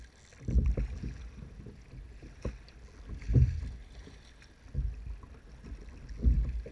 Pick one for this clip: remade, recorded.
recorded